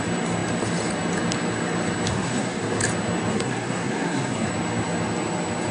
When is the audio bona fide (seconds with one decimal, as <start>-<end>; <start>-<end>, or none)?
0.0-2.1; 2.8-3.3; 4.5-5.7